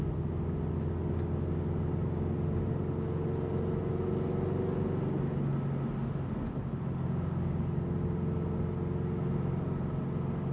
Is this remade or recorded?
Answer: recorded